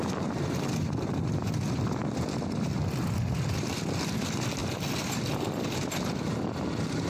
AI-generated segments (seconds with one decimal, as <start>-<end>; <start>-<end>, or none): 4.6-5.2